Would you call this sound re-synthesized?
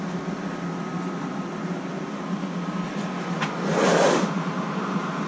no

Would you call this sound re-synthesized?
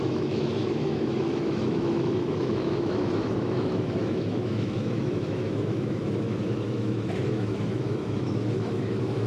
yes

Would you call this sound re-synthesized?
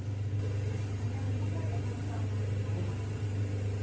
no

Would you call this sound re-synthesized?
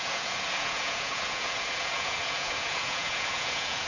yes